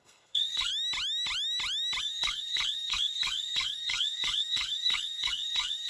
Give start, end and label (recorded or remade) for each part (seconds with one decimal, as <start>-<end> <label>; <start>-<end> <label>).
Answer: 0.0-0.7 remade; 0.7-2.0 recorded; 2.0-5.9 remade